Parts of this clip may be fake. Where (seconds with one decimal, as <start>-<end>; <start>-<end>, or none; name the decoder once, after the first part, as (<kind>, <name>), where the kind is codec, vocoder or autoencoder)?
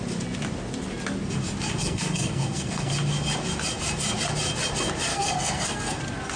1.8-2.9 (codec, SNAC); 5.1-6.0